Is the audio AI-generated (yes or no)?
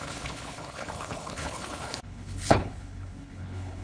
yes